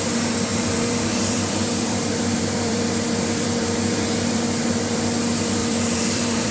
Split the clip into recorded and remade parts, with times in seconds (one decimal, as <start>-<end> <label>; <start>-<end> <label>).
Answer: 0.0-0.5 recorded; 0.5-4.4 remade; 4.4-5.6 recorded; 5.6-6.5 remade